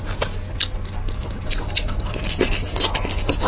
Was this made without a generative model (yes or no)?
yes